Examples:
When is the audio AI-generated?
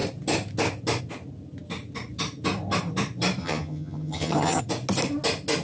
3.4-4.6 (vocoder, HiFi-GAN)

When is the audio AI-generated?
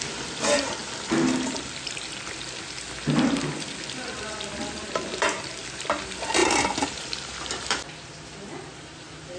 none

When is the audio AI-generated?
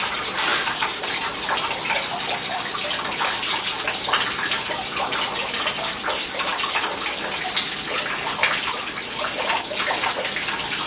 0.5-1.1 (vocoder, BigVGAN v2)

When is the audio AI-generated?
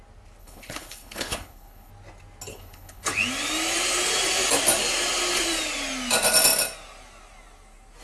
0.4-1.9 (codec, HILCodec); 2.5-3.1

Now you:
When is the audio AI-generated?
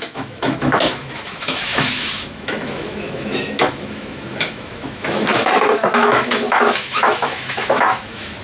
0.0-8.4 (autoencoder, DAC-VAE)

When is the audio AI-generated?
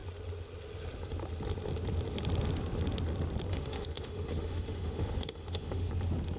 3.5-5.9 (autoencoder, DAC-VAE)